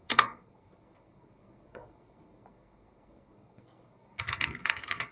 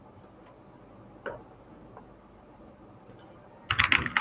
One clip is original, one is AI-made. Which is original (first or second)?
second